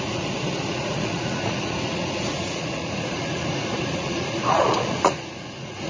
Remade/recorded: remade